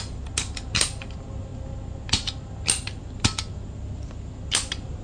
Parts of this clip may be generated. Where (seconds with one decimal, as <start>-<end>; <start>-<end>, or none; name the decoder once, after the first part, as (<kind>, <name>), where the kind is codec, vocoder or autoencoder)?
none